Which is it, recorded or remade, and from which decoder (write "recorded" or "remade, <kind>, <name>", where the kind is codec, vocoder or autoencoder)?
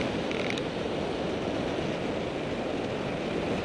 recorded